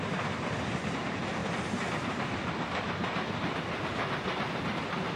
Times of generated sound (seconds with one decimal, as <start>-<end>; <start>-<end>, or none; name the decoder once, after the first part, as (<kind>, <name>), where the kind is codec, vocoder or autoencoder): none